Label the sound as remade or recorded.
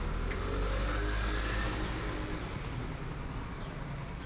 recorded